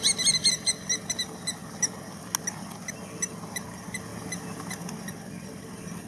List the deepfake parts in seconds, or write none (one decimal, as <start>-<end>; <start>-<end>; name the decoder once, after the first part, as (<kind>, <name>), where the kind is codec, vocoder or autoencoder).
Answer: none